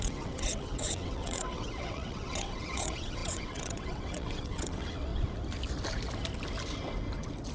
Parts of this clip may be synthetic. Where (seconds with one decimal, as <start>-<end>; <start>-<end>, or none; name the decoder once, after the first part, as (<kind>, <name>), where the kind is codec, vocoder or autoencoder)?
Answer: 0.0-5.1 (vocoder, WaveNeXt)